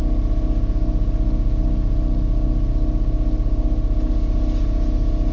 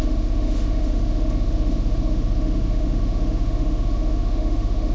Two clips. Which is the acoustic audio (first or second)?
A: first